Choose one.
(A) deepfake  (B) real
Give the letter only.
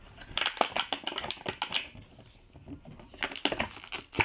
B